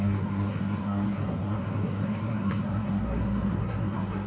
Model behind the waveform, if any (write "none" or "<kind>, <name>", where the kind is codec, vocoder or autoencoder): codec, SNAC